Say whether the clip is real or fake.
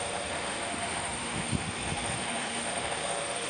fake